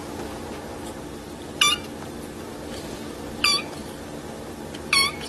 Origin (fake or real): real